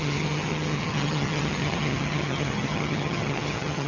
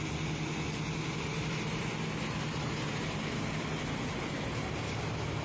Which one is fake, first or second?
first